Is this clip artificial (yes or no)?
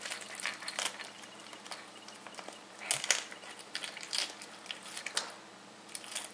no